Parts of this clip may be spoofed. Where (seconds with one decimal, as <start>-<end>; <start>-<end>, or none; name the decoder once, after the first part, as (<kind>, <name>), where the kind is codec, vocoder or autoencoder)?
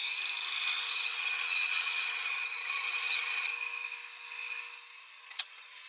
0.9-3.5 (vocoder, Vocos); 5.1-5.9